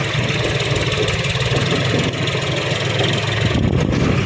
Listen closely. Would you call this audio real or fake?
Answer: real